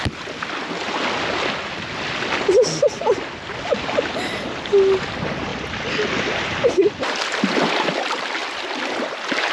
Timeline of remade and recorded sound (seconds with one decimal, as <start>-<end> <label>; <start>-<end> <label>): 0.0-9.5 recorded